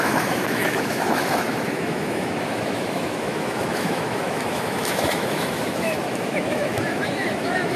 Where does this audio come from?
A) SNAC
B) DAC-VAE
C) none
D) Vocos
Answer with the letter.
B